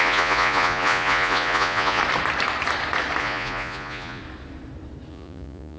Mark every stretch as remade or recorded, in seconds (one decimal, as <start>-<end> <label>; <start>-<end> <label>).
0.0-2.0 remade; 2.0-3.2 recorded; 3.2-4.2 remade; 4.2-5.1 recorded; 5.1-5.8 remade